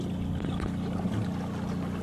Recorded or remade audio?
recorded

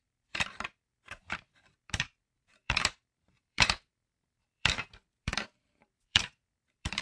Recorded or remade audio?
remade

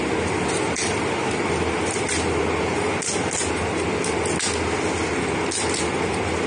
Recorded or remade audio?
recorded